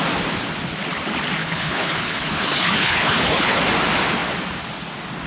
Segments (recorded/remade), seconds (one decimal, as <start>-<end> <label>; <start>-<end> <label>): 0.0-1.4 recorded; 1.4-3.6 remade; 3.6-5.3 recorded